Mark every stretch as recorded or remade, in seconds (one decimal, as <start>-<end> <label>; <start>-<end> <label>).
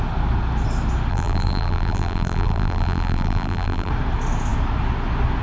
0.0-1.1 recorded; 1.1-3.9 remade; 3.9-5.4 recorded